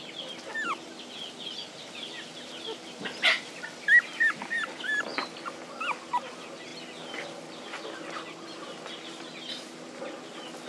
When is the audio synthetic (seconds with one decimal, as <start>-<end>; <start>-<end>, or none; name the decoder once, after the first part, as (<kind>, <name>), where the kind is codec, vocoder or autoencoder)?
none